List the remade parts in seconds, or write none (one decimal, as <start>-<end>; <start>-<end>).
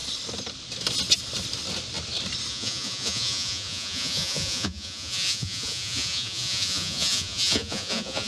2.5-8.3